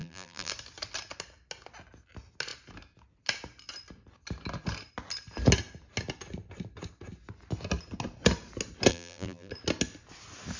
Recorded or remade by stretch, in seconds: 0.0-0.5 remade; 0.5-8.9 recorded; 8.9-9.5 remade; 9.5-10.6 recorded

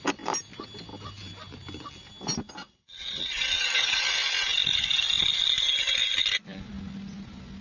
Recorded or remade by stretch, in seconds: 0.0-2.6 recorded; 2.6-4.0 remade; 4.0-7.6 recorded

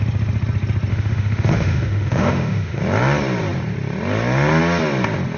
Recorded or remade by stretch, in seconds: 0.0-0.9 recorded; 0.9-2.8 remade; 2.8-5.4 recorded

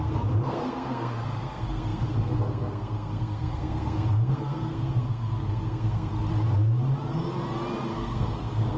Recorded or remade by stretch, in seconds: 0.0-6.1 remade; 6.1-7.9 recorded; 7.9-8.8 remade

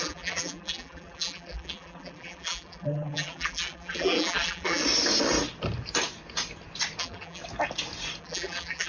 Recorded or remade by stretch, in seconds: 0.0-4.8 remade; 4.8-7.0 recorded; 7.0-7.4 remade; 7.4-8.2 recorded; 8.2-8.9 remade

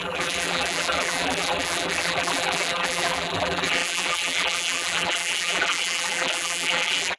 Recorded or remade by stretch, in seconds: 0.0-7.2 remade

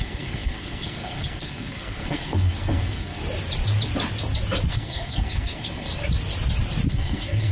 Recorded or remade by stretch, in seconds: 0.0-3.2 remade; 3.2-4.7 recorded; 4.7-5.9 remade; 5.9-6.9 recorded; 6.9-7.5 remade

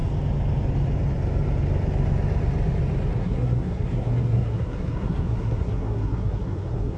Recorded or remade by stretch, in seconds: 0.0-3.1 recorded; 3.1-7.0 remade